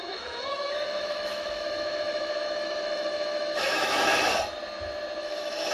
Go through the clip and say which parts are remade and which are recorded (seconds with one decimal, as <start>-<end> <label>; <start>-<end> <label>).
0.0-4.3 remade; 4.3-5.2 recorded; 5.2-5.7 remade